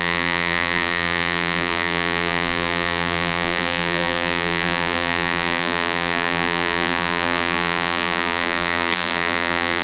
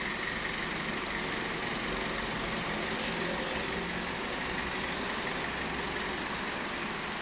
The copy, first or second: first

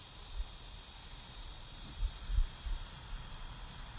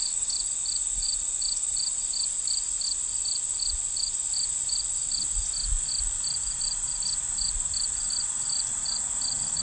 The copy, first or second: first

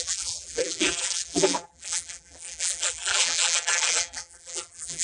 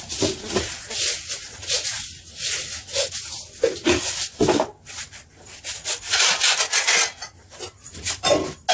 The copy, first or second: first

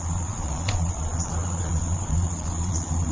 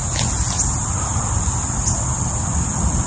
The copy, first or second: first